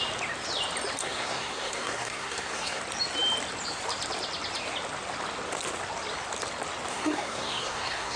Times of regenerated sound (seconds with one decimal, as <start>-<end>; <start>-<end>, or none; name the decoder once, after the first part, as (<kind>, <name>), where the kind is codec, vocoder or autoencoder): 1.0-2.8 (codec, SNAC); 6.9-8.2